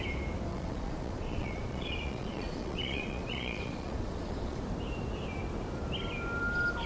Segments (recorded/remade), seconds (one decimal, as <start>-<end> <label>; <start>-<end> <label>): 0.0-0.5 recorded; 0.5-4.6 remade; 4.6-6.9 recorded